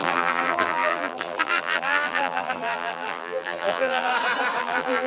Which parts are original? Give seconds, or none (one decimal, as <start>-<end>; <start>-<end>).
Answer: 4.1-4.6